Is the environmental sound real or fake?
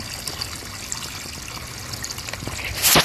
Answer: real